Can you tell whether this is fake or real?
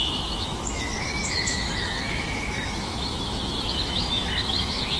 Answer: fake